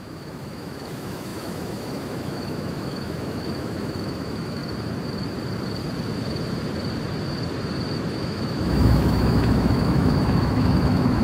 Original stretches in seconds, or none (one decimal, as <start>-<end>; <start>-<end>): 4.6-8.1

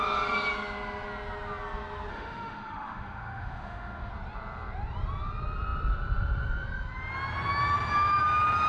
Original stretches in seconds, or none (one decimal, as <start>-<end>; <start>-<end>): 0.0-2.1; 4.1-8.7